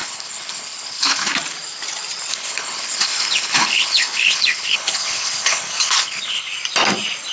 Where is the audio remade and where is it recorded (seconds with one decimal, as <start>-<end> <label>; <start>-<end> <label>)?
0.0-1.3 remade; 1.3-2.3 recorded; 2.3-6.4 remade; 6.4-7.3 recorded